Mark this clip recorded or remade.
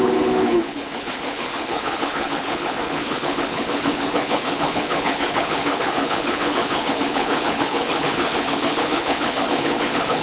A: remade